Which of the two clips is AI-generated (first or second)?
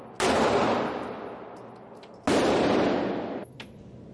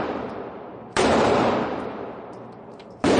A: second